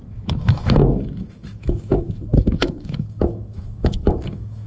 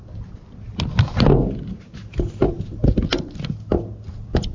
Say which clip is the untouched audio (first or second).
second